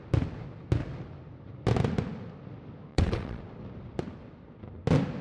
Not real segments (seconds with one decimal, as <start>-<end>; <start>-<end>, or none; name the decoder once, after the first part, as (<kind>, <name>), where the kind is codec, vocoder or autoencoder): 2.9-3.4 (vocoder, WaveNeXt)